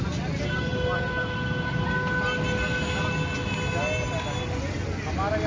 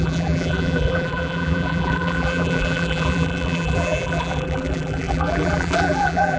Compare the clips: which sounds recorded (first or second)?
first